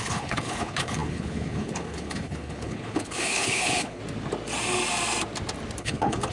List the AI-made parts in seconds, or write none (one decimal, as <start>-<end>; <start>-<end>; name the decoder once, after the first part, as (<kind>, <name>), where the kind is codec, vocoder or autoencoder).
0.0-4.0 (codec, HILCodec); 5.8-6.3

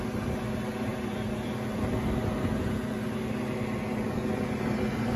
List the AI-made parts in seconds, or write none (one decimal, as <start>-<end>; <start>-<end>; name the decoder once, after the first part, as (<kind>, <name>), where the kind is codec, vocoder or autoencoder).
0.9-1.5 (vocoder, BigVGAN v2)